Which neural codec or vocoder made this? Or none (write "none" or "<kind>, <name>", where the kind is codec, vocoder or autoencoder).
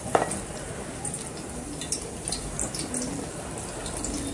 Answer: none